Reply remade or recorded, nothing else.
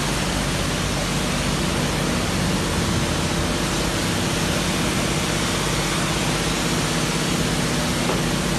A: recorded